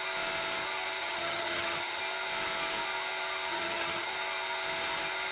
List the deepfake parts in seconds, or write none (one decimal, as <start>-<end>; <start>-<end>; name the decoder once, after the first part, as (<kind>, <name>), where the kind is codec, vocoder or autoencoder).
1.0-2.0 (vocoder, HiFi-GAN); 3.5-4.1